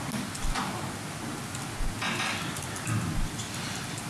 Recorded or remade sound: recorded